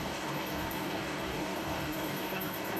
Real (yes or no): no